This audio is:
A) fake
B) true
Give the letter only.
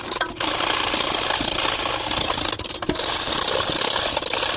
B